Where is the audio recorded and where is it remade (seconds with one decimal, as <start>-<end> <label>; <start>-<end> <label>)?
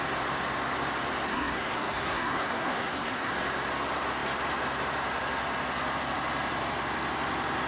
0.0-1.3 recorded; 1.3-3.3 remade; 3.3-7.7 recorded